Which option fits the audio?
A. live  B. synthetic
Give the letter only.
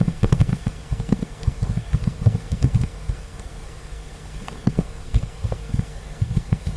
B